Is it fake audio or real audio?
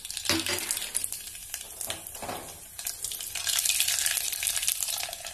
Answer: real